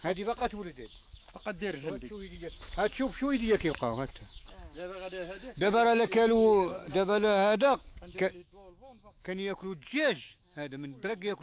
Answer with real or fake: fake